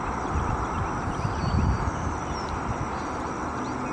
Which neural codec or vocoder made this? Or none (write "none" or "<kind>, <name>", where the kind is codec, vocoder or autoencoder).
none